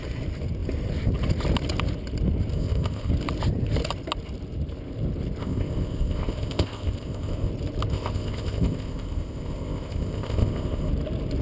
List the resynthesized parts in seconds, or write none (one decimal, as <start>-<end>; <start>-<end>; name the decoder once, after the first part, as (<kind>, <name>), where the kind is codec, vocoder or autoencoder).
2.5-3.1 (codec, ZipCodec); 5.4-7.5; 7.9-10.9